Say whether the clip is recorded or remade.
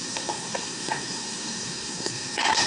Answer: remade